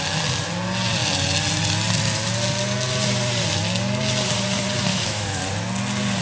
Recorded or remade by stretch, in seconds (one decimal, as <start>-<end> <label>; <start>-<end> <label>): 0.0-4.9 recorded; 4.9-5.4 remade; 5.4-6.2 recorded